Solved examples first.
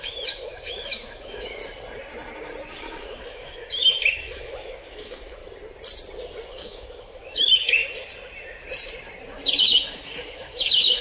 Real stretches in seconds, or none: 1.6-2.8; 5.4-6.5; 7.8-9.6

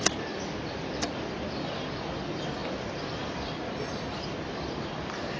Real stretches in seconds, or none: none

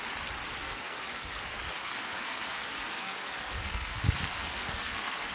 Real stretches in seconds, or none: 0.0-0.6; 1.4-1.8

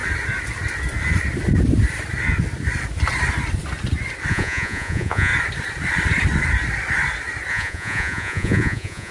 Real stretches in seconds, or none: 0.0-4.3; 5.3-7.5

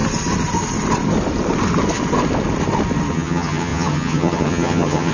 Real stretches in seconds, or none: 0.0-3.1